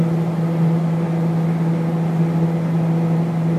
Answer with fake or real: real